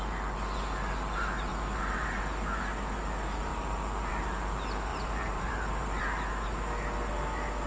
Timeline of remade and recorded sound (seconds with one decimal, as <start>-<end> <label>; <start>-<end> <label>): 0.0-1.5 recorded; 1.5-2.2 remade; 2.2-4.9 recorded; 4.9-6.0 remade; 6.0-7.7 recorded